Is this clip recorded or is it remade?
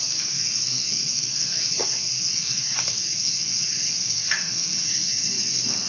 remade